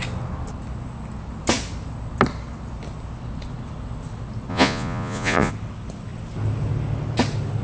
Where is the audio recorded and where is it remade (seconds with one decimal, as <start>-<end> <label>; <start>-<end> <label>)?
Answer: 0.0-4.5 recorded; 4.5-5.5 remade; 5.5-7.6 recorded

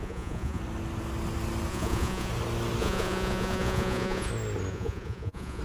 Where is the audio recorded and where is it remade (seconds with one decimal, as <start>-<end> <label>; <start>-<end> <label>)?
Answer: 0.0-0.6 remade; 0.6-1.7 recorded; 1.7-2.3 remade; 2.3-2.8 recorded; 2.8-4.3 remade; 4.3-4.7 recorded; 4.7-5.6 remade

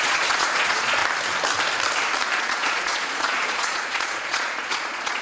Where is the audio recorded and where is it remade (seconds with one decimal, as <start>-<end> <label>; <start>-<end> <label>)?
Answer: 0.0-1.0 remade; 1.0-2.4 recorded; 2.4-5.2 remade

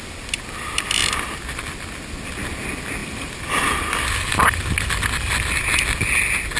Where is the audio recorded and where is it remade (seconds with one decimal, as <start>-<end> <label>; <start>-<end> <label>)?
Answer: 0.0-6.6 recorded

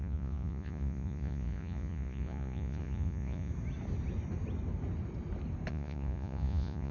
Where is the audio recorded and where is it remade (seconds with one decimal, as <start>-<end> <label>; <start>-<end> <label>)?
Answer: 0.0-3.5 remade; 3.5-5.7 recorded; 5.7-6.9 remade

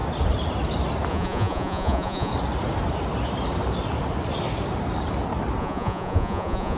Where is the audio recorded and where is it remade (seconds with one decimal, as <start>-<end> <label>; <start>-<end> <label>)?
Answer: 0.0-1.1 recorded; 1.1-2.3 remade; 2.3-5.6 recorded; 5.6-6.8 remade

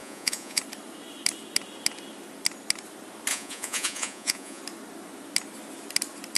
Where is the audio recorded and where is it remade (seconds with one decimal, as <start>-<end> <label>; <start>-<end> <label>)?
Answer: 0.0-0.6 remade; 0.6-3.3 recorded; 3.3-4.6 remade; 4.6-6.4 recorded

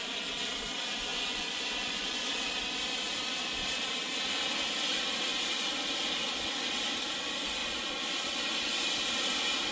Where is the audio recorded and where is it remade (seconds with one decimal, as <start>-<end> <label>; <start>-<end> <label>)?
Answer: 0.0-1.1 recorded; 1.1-2.3 remade; 2.3-9.7 recorded